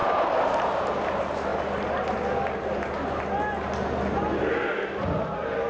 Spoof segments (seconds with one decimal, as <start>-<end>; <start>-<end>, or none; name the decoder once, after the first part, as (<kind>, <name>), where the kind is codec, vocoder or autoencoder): 0.0-1.0 (vocoder, BigVGAN v2)